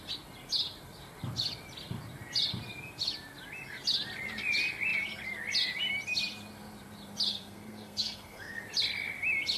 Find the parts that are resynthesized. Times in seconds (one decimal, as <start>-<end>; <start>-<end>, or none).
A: 7.3-8.6